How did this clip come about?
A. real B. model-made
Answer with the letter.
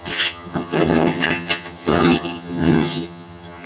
B